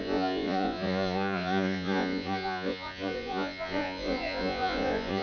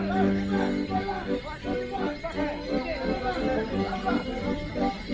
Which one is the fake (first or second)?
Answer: first